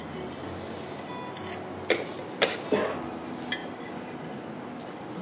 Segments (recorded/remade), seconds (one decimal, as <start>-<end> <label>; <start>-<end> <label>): 0.0-5.2 recorded